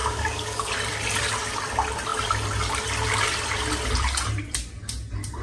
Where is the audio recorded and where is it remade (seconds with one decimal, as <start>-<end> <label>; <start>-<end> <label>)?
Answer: 0.0-0.7 remade; 0.7-5.4 recorded